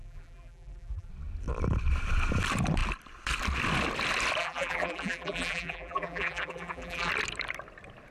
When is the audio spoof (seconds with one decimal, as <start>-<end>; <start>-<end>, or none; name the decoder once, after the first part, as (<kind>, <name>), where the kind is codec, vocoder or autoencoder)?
0.0-1.1 (vocoder, BigVGAN v2); 4.4-7.1